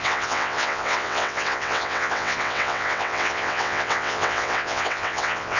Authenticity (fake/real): fake